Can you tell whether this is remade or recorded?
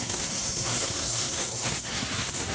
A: remade